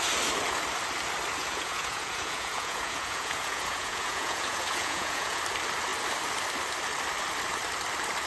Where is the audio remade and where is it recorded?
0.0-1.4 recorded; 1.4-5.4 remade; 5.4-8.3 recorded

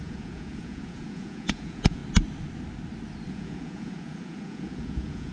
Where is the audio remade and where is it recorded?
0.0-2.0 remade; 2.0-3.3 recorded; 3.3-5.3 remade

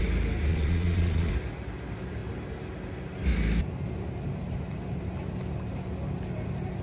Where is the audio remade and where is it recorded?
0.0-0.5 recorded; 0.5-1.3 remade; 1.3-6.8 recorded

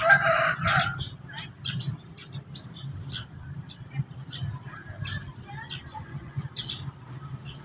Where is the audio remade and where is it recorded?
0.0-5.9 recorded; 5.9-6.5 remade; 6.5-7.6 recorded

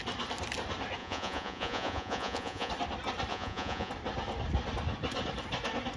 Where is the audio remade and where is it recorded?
0.0-1.0 recorded; 1.0-2.7 remade; 2.7-3.3 recorded; 3.3-3.9 remade; 3.9-6.0 recorded

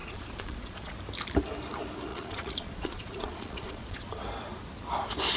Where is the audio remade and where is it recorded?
0.0-0.9 remade; 0.9-2.1 recorded; 2.1-4.2 remade; 4.2-5.4 recorded

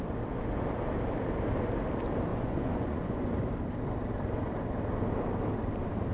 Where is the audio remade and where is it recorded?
0.0-2.3 recorded; 2.3-3.3 remade; 3.3-6.1 recorded

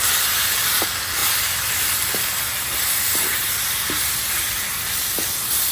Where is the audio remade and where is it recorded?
0.0-5.7 recorded